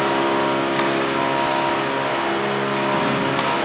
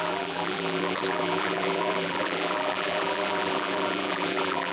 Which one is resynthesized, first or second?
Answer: second